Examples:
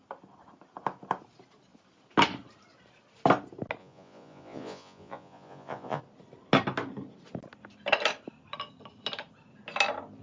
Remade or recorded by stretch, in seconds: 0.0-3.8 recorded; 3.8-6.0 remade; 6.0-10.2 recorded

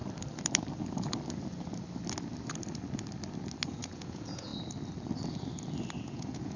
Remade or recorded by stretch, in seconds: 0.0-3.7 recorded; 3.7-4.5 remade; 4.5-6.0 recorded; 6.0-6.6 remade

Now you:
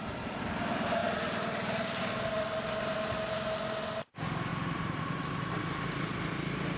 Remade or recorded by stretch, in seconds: 0.0-6.8 recorded

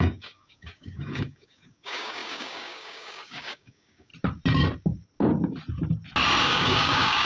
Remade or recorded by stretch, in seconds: 0.0-4.1 remade; 4.1-6.4 recorded; 6.4-7.3 remade

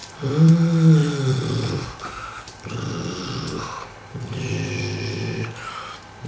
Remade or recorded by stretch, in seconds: 0.0-0.5 remade; 0.5-1.0 recorded; 1.0-4.8 remade; 4.8-6.3 recorded

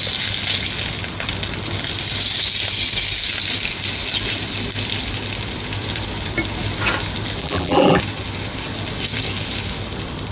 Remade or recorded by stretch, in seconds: 0.0-7.4 recorded; 7.4-8.0 remade; 8.0-10.3 recorded

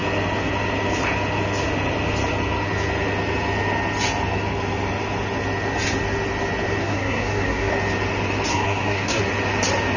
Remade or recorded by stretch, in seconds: 0.0-6.8 recorded; 6.8-7.7 remade; 7.7-8.5 recorded; 8.5-9.2 remade; 9.2-10.0 recorded

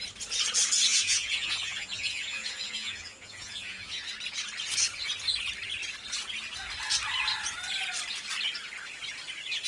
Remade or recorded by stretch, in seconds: 0.0-0.9 recorded; 0.9-4.1 remade; 4.1-9.7 recorded